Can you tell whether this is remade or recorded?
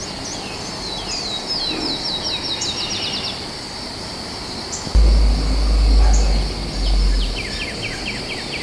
recorded